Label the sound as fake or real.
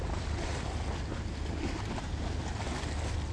real